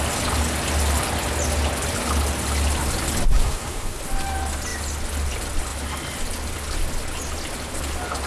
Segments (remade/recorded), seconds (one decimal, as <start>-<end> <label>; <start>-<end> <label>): 0.0-3.3 recorded; 3.3-4.0 remade; 4.0-8.3 recorded